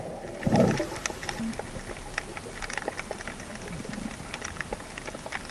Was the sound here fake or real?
real